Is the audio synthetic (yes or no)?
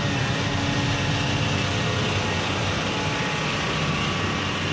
no